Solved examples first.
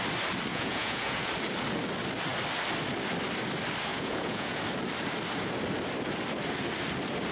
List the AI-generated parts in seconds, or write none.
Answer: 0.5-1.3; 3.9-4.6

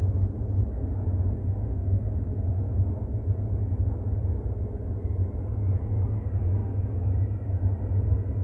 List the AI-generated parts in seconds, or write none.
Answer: 1.4-2.9

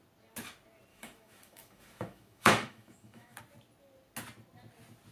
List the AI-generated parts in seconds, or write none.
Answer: 0.9-3.4